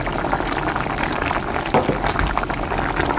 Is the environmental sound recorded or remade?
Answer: recorded